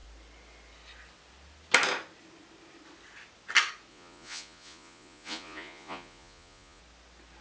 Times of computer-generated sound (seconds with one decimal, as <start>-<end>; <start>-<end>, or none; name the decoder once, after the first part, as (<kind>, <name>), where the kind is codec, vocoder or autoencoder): 3.9-6.8 (vocoder, Vocos)